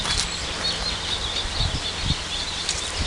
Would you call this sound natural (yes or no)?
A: yes